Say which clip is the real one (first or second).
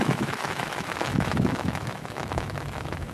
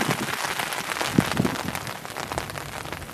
second